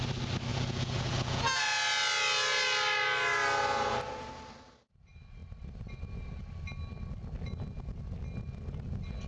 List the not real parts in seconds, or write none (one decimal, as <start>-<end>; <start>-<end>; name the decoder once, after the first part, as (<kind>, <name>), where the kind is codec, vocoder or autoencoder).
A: 0.5-1.6 (vocoder, Vocos)